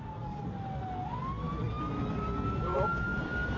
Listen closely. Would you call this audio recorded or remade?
recorded